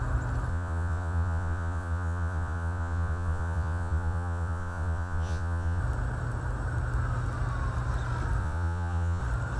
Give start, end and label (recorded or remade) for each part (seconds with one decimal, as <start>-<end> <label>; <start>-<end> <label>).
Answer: 0.0-0.5 recorded; 0.5-5.8 remade; 5.8-8.4 recorded; 8.4-9.2 remade; 9.2-9.6 recorded